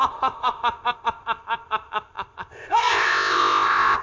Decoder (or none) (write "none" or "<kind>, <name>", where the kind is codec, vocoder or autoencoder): codec, ZipCodec